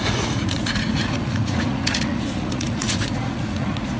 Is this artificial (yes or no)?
yes